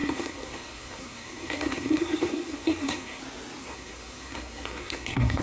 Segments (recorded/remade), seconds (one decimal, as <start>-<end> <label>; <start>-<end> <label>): 0.0-3.2 remade; 3.2-3.6 recorded; 3.6-5.4 remade